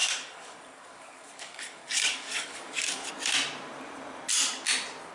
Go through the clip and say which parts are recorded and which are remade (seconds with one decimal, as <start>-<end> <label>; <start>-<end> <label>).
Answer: 0.0-3.1 remade; 3.1-5.1 recorded